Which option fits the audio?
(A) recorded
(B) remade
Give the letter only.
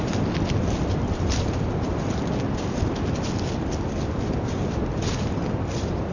A